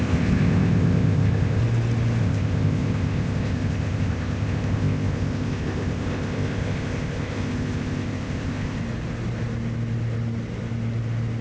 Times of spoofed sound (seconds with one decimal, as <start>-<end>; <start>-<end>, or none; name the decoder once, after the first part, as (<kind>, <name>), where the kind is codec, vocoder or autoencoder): 0.0-1.6 (codec, ZipCodec); 2.2-8.8